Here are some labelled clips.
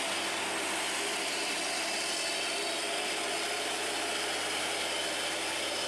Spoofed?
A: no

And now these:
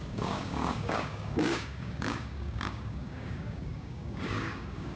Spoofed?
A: yes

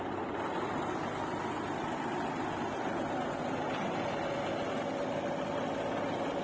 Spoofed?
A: no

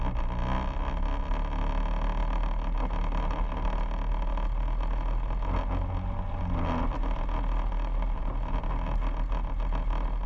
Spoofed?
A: no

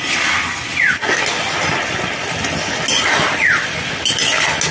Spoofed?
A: no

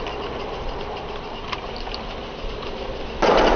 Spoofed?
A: no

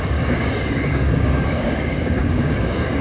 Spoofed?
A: yes